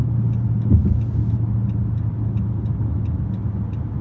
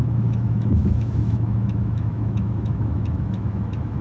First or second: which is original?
first